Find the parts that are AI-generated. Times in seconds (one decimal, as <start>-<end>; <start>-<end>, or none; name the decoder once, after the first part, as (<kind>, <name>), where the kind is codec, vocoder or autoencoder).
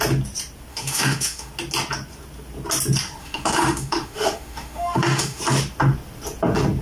0.7-1.5 (autoencoder, DAC-VAE); 3.2-5.4